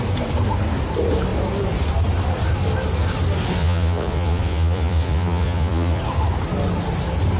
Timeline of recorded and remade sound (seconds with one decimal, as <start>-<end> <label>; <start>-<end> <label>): 0.0-3.6 recorded; 3.6-6.0 remade; 6.0-7.4 recorded